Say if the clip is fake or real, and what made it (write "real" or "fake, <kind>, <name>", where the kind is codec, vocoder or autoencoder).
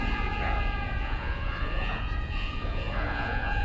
fake, vocoder, Vocos